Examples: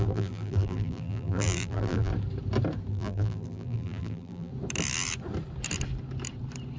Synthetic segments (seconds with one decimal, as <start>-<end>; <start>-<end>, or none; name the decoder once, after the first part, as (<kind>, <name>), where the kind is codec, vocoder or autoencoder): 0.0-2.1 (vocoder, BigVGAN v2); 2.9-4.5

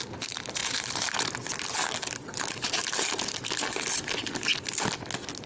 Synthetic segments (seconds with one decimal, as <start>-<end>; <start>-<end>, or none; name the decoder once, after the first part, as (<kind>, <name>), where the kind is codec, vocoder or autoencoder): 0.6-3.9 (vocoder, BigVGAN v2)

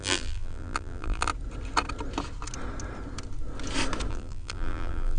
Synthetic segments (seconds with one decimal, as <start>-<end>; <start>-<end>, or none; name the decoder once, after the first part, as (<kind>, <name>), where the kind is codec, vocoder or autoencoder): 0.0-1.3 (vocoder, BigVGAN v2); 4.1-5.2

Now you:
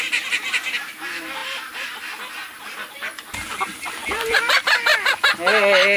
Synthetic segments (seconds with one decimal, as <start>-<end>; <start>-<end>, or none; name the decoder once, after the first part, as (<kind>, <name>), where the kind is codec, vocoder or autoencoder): 1.4-2.0 (vocoder, BigVGAN v2); 2.4-3.2; 4.0-4.6

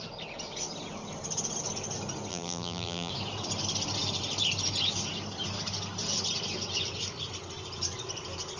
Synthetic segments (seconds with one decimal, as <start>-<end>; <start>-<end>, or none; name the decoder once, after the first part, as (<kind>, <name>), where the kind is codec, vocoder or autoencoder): 2.3-3.1 (vocoder, BigVGAN v2)